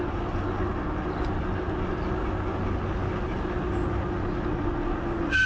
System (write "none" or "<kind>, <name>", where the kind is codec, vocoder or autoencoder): none